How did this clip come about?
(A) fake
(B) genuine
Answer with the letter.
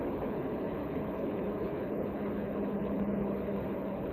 A